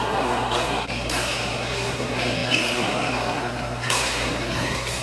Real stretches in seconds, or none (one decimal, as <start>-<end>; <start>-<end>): none